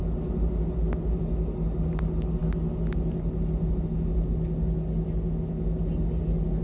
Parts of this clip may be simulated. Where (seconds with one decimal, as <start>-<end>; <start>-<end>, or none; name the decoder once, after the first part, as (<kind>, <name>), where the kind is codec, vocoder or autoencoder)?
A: none